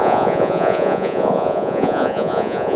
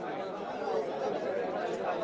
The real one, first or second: second